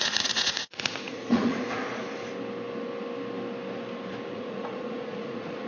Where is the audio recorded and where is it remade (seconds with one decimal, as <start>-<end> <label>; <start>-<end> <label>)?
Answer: 0.0-2.0 remade; 2.0-4.3 recorded; 4.3-5.7 remade